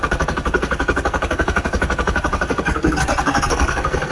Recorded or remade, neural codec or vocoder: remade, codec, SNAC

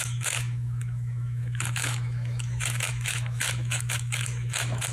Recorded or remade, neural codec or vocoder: remade, autoencoder, DAC-VAE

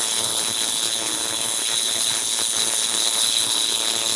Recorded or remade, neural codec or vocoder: remade, codec, HILCodec